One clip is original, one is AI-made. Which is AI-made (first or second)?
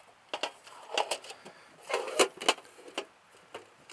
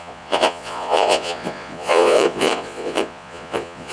second